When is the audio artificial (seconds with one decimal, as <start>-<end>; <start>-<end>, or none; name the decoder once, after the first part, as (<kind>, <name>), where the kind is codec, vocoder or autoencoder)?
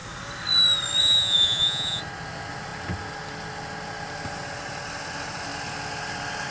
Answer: 1.0-2.0 (vocoder, Vocos)